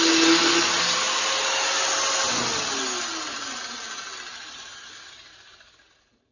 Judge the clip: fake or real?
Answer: real